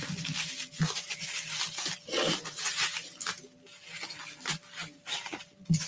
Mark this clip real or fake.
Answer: real